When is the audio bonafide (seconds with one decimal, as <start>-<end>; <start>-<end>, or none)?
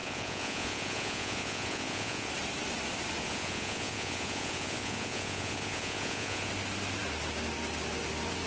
2.3-3.2; 6.5-8.5